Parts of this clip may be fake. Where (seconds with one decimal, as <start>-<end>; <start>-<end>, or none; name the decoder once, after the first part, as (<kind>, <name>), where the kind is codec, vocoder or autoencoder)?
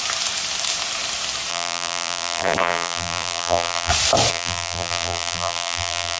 1.5-3.9 (vocoder, BigVGAN v2); 4.3-6.2